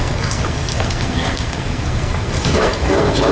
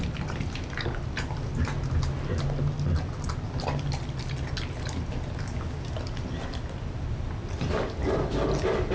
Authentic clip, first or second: second